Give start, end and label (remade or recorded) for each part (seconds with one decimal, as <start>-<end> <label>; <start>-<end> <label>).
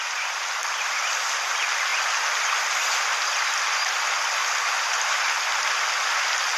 0.0-6.6 recorded